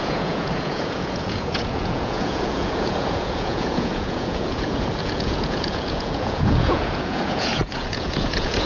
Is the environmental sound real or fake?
fake